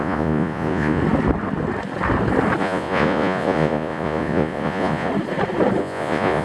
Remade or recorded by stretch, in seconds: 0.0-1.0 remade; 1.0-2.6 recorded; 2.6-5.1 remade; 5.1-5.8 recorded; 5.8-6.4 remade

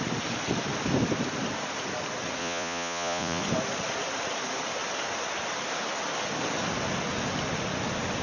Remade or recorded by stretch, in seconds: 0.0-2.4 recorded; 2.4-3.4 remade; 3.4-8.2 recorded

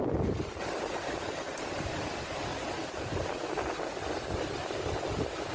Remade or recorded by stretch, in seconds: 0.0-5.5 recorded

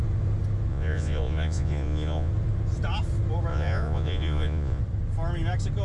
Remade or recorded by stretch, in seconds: 0.0-0.7 recorded; 0.7-2.3 remade; 2.3-3.5 recorded; 3.5-4.8 remade; 4.8-5.8 recorded